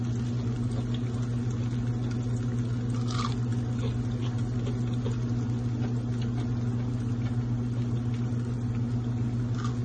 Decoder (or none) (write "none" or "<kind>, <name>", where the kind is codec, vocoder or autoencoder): none